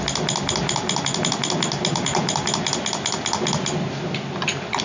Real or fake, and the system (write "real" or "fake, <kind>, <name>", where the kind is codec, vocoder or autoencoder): real